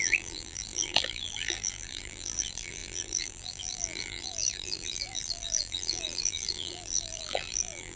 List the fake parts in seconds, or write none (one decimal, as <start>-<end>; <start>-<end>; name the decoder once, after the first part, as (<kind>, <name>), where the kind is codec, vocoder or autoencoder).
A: 0.0-8.0 (vocoder, BigVGAN v2)